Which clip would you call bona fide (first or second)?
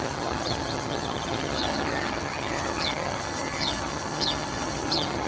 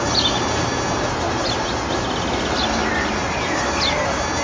second